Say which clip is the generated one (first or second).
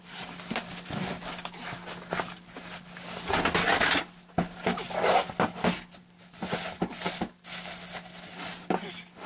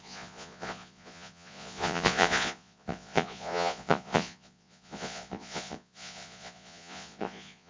second